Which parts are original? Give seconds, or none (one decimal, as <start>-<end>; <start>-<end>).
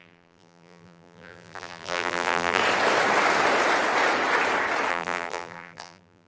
2.6-4.9